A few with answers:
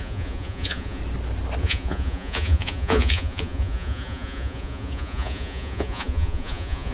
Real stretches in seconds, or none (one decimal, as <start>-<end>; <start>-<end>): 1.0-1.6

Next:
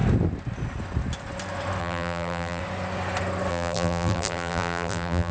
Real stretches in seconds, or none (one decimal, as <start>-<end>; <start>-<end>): 0.0-1.8; 2.6-3.5

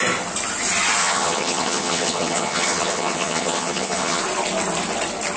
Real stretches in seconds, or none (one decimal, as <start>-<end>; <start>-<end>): 0.0-1.0; 4.2-5.4

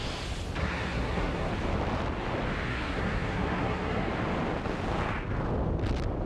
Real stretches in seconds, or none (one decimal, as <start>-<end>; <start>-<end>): 0.0-0.6; 1.5-2.7; 4.1-6.3